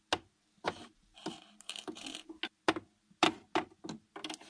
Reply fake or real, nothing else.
real